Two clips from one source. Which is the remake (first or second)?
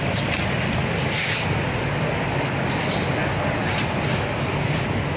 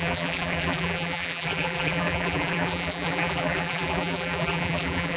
second